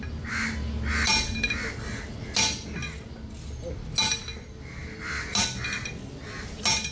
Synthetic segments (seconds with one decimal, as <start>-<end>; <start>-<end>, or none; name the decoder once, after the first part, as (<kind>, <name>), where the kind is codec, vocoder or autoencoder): none